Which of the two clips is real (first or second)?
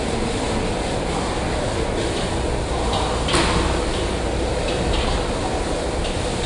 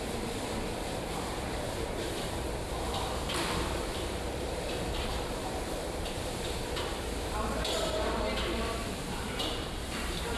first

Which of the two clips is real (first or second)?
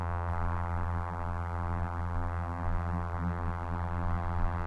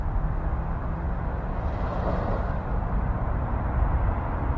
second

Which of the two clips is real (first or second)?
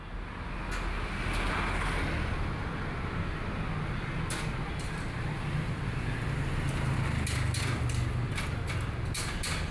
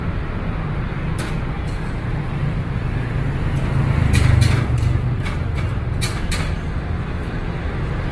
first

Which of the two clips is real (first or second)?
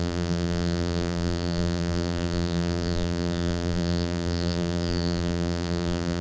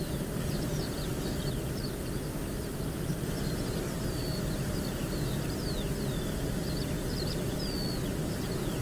second